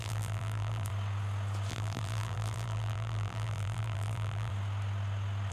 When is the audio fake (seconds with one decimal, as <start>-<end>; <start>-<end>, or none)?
0.0-0.9; 1.7-4.5